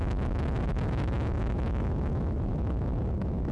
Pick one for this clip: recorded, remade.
remade